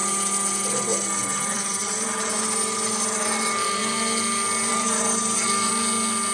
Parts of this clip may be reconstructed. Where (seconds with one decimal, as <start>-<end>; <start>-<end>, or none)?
0.0-3.8; 4.7-5.7